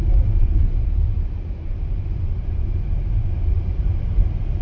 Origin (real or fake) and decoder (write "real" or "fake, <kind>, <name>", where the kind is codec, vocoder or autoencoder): fake, vocoder, BigVGAN v2